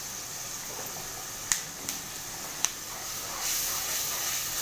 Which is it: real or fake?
real